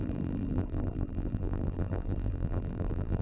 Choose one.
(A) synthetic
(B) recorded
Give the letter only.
A